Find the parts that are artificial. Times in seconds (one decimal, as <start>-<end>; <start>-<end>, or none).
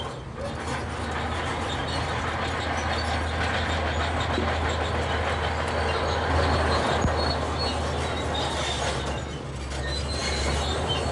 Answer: none